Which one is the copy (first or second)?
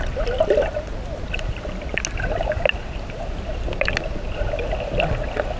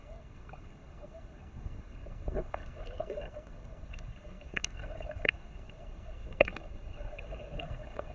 second